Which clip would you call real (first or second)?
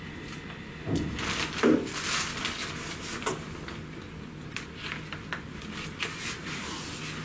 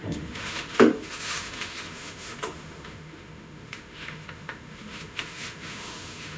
first